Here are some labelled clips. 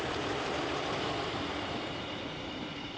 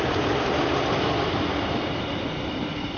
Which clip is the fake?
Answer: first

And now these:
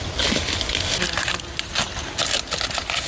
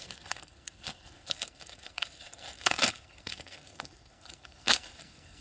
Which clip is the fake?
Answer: second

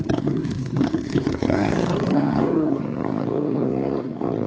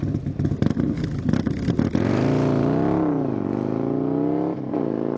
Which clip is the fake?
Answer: first